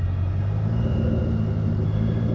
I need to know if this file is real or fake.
real